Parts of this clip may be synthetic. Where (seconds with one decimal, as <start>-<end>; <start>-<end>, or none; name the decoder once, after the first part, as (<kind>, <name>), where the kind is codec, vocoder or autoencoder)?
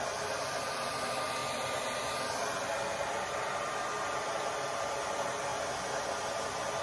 none